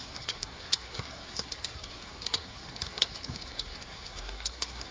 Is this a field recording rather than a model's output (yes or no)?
no